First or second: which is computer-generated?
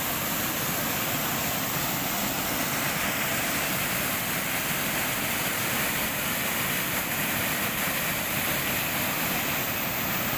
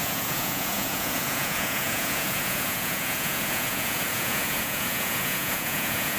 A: second